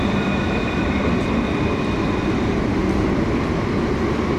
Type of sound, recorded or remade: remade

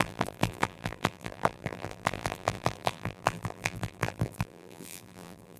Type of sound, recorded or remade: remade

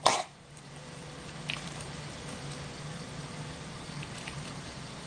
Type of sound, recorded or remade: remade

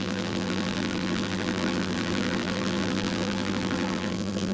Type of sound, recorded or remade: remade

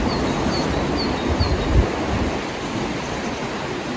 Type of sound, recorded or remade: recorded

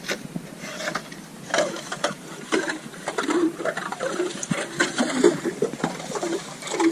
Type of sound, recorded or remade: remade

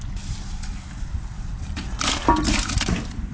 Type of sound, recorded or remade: recorded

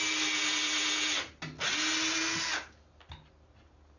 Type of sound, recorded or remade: recorded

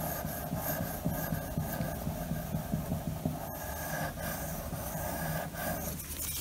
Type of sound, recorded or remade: recorded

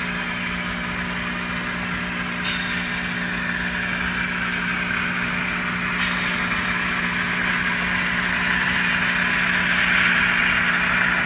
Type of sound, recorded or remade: recorded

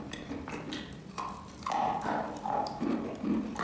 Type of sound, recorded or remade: recorded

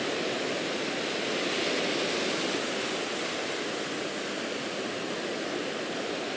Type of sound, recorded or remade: recorded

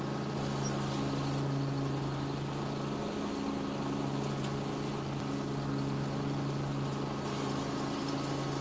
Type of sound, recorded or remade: recorded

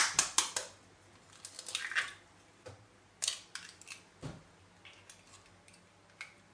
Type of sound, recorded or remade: recorded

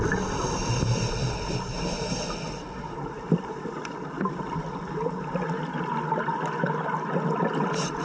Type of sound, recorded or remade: recorded